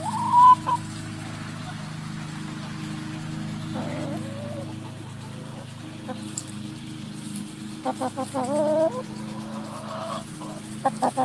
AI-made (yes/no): no